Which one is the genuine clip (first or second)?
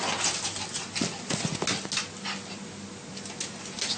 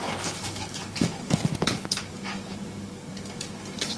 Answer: first